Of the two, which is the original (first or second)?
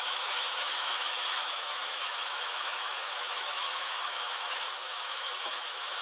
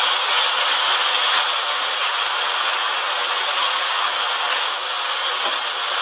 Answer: second